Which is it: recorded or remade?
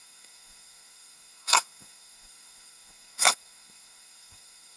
remade